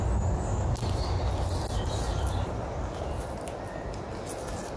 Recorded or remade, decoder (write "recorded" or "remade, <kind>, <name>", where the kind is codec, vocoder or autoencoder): recorded